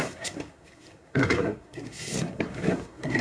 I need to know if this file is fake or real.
fake